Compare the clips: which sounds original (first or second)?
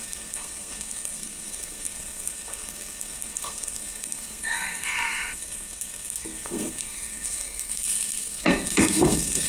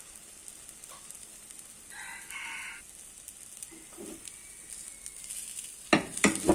second